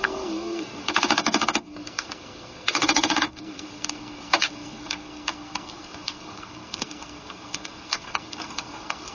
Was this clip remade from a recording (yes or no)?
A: yes